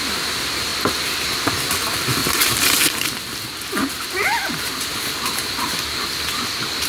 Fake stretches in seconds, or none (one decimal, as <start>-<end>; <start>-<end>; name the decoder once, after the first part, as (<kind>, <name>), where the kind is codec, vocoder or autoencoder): 0.0-0.7 (vocoder, BigVGAN v2); 1.5-2.2; 5.9-6.9